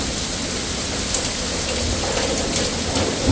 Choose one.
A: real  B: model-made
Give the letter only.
A